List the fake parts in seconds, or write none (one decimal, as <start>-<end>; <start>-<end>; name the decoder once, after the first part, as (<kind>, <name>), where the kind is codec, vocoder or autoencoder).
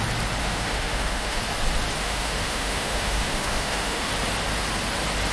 0.4-1.4 (autoencoder, DAC-VAE); 2.0-4.1